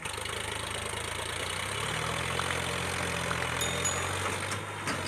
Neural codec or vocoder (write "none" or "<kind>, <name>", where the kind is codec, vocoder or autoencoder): none